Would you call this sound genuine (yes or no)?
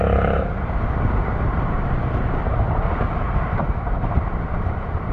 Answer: no